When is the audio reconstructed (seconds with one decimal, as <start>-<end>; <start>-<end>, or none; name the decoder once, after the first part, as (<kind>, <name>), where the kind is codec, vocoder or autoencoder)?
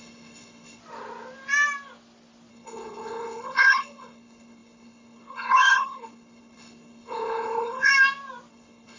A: 0.0-0.8 (codec, HILCodec); 2.5-7.9; 8.5-9.0